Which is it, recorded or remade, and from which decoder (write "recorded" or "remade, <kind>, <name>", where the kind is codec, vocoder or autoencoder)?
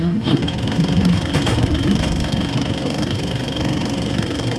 remade, codec, SNAC